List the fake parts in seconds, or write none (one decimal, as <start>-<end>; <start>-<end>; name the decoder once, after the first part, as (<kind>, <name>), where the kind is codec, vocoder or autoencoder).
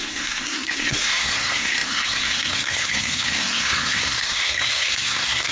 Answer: 0.0-5.5 (codec, SNAC)